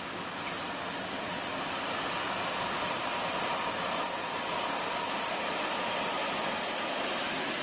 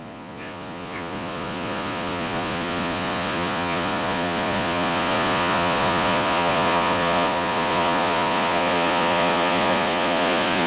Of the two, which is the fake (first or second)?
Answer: second